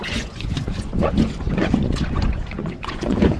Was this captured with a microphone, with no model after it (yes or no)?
no